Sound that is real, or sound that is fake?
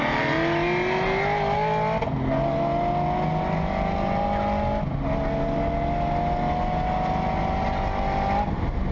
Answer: real